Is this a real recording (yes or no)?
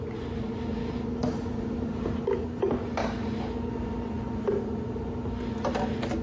yes